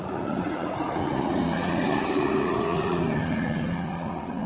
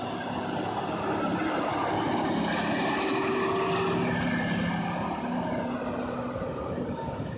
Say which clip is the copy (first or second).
first